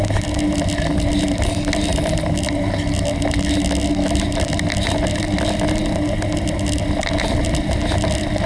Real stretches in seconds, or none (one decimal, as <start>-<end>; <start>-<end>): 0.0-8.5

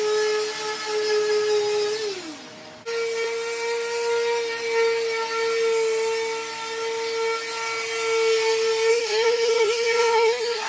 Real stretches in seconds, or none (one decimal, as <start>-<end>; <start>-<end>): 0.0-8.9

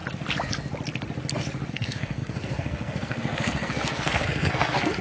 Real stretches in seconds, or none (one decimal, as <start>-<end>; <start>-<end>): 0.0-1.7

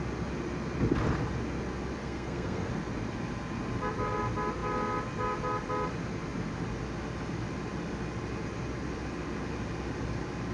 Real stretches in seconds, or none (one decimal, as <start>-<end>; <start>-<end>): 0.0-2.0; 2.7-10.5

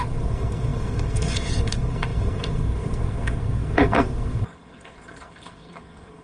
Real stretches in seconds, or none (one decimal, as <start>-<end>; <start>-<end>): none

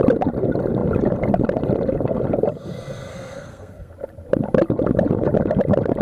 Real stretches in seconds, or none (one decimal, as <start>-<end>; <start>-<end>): 0.0-3.1; 3.9-6.0